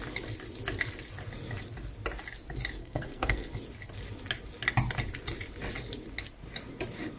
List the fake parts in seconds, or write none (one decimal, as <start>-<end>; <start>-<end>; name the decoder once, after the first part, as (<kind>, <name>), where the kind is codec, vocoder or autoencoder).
2.8-3.5 (codec, SNAC)